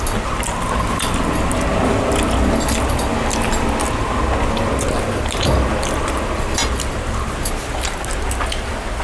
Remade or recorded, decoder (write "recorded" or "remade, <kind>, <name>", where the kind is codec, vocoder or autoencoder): recorded